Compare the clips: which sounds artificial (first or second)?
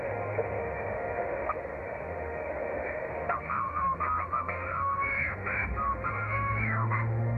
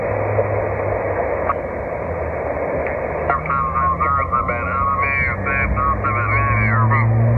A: first